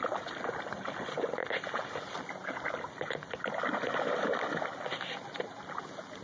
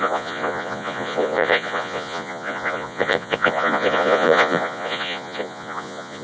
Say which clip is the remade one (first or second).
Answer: second